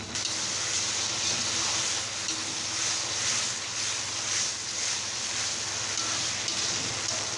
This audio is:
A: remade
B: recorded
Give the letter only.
B